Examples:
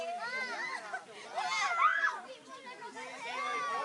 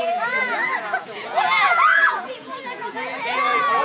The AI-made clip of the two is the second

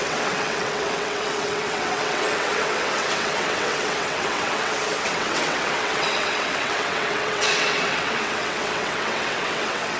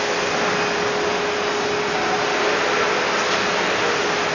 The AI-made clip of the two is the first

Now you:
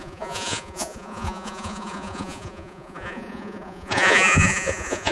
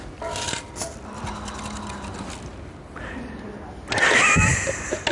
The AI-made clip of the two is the first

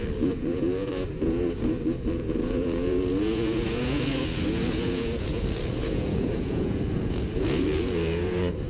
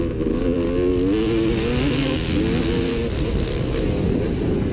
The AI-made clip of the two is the first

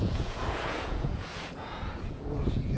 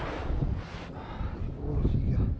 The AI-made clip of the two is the first